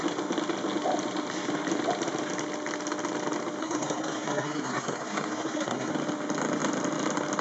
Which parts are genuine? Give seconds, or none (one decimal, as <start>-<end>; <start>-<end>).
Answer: 0.0-3.6; 5.9-7.4